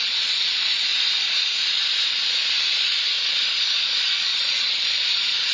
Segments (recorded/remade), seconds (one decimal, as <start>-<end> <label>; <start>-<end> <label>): 0.0-0.9 remade; 0.9-2.7 recorded; 2.7-5.5 remade